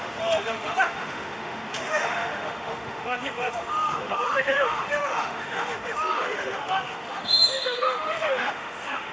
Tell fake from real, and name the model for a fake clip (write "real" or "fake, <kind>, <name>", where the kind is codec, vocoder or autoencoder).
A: fake, autoencoder, DAC-VAE